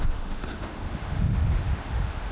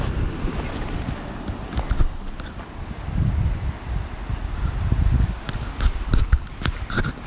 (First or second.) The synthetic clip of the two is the first